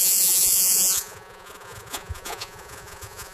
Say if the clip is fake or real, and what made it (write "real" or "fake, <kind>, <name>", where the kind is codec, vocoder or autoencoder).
fake, vocoder, Vocos